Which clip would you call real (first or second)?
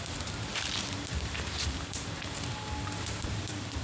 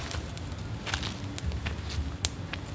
second